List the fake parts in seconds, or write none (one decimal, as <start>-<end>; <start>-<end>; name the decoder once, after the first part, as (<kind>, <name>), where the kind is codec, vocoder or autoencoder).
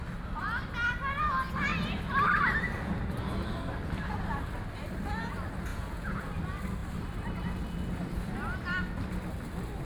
5.7-6.3 (vocoder, Vocos)